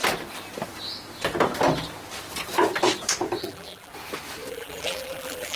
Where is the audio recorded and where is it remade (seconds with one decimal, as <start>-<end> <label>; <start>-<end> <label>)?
0.0-3.4 recorded; 3.4-3.9 remade; 3.9-4.5 recorded; 4.5-5.6 remade